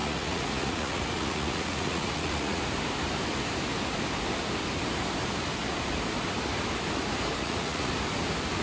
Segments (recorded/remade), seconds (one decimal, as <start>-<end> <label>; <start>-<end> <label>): 0.0-2.6 remade; 2.6-7.4 recorded; 7.4-7.9 remade; 7.9-8.6 recorded